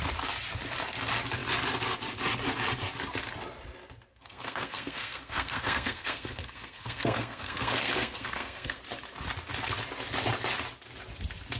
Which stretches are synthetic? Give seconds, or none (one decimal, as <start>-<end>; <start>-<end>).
4.1-8.8